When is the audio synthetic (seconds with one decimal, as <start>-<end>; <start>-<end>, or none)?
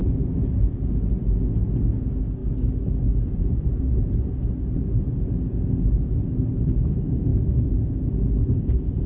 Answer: 3.7-4.2